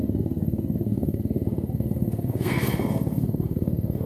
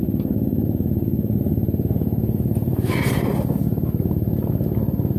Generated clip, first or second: first